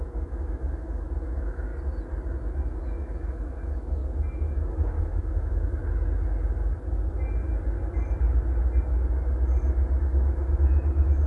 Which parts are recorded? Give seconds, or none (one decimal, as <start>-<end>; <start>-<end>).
1.7-2.8; 4.0-4.5; 5.8-10.0